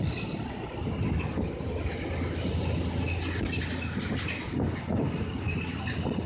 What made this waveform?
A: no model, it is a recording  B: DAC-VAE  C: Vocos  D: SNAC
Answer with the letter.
A